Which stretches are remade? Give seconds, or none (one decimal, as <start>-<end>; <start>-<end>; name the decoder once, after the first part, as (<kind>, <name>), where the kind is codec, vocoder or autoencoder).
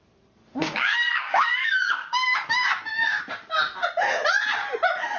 0.5-3.2 (codec, DAC)